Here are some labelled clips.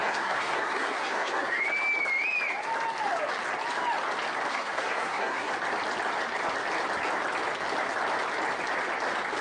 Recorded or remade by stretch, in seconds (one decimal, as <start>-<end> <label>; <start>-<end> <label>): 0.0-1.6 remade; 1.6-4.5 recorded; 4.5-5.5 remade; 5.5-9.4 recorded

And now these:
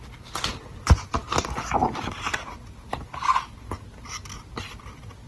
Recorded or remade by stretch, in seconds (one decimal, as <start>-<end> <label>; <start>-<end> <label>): 0.0-5.3 recorded

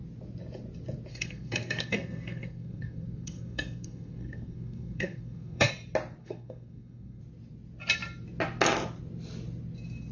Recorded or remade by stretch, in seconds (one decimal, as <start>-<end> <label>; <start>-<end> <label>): 0.0-1.1 recorded; 1.1-5.7 remade; 5.7-6.2 recorded; 6.2-7.2 remade; 7.2-10.1 recorded

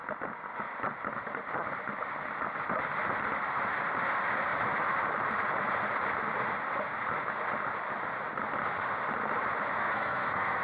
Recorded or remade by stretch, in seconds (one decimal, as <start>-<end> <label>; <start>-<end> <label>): 0.0-9.8 recorded; 9.8-10.6 remade

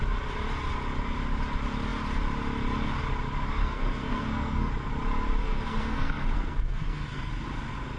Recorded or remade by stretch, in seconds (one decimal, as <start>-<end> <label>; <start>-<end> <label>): 0.0-3.6 recorded; 3.6-4.7 remade; 4.7-5.4 recorded; 5.4-7.3 remade; 7.3-8.0 recorded